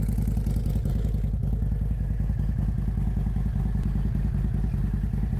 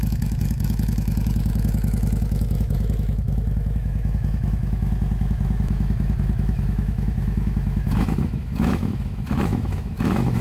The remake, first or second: second